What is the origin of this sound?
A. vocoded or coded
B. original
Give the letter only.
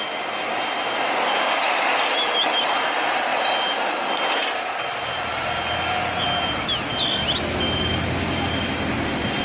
B